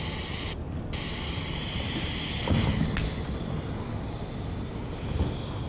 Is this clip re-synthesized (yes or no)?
no